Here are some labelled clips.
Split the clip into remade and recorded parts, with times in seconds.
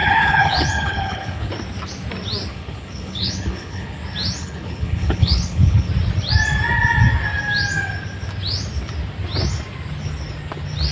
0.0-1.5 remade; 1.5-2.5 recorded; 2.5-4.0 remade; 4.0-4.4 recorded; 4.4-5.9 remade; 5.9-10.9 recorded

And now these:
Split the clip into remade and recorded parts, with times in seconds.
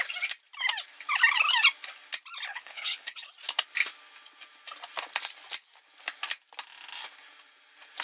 0.0-2.5 recorded; 2.5-3.3 remade; 3.3-8.0 recorded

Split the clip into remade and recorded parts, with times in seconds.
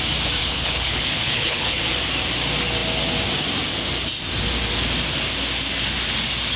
0.0-0.4 recorded; 0.4-1.8 remade; 1.8-6.6 recorded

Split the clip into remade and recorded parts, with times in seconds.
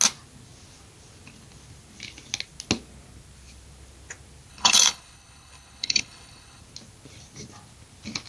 0.0-4.5 recorded; 4.5-6.6 remade; 6.6-8.3 recorded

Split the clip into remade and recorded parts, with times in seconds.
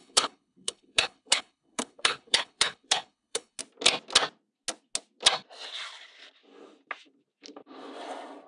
0.0-3.6 remade; 3.6-8.5 recorded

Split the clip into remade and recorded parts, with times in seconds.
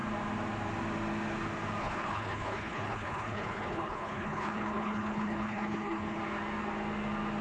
0.0-1.8 recorded; 1.8-6.2 remade; 6.2-7.4 recorded